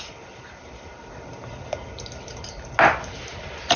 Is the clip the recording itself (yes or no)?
yes